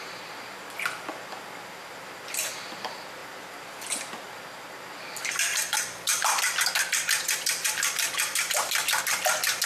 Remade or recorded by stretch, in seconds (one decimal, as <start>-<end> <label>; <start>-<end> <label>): 0.0-6.1 recorded; 6.1-9.7 remade